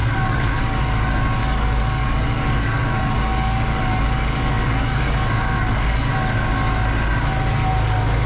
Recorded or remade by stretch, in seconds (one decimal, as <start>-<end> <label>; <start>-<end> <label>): 0.0-0.6 remade; 0.6-1.4 recorded; 1.4-6.1 remade; 6.1-8.3 recorded